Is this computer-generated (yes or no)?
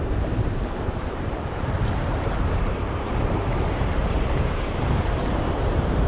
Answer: yes